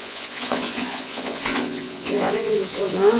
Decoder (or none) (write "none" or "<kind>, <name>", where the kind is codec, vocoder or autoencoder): vocoder, Vocos